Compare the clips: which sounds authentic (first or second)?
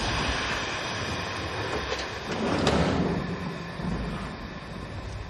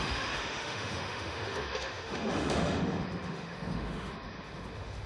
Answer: first